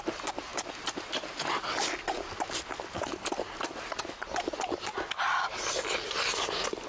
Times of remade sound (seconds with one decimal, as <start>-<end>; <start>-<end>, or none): none